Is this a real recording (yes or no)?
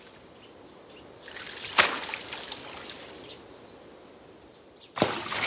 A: yes